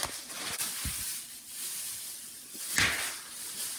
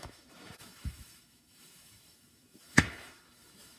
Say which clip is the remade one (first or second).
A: second